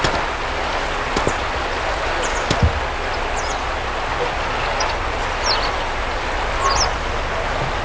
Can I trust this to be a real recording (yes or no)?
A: yes